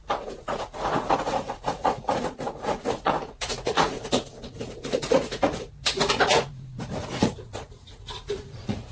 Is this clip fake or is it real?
fake